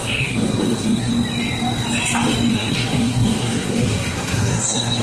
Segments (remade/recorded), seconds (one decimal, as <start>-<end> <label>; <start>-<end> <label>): 0.0-1.1 remade; 1.1-2.5 recorded; 2.5-5.0 remade